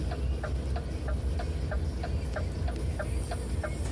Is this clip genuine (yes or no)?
yes